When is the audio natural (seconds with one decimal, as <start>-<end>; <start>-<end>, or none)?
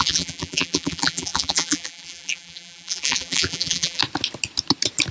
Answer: 4.0-5.1